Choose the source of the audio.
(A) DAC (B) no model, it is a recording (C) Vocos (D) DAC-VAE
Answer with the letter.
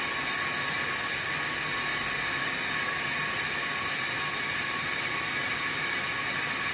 B